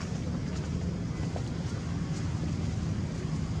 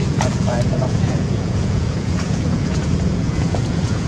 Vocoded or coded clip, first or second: second